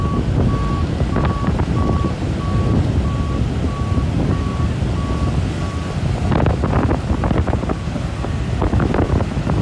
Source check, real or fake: real